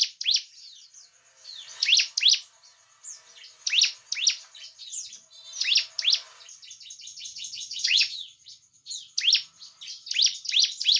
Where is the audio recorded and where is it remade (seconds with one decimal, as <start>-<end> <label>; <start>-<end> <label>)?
0.0-7.1 recorded; 7.1-8.5 remade; 8.5-11.0 recorded